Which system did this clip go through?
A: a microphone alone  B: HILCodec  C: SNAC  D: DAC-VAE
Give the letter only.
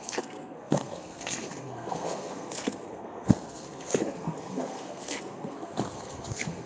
C